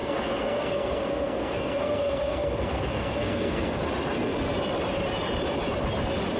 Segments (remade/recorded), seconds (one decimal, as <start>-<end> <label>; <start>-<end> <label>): 0.0-3.8 remade; 3.8-6.4 recorded